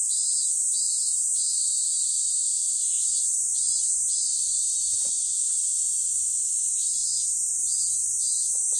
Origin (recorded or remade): remade